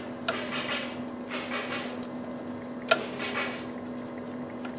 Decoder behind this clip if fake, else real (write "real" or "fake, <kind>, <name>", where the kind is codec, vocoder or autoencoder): real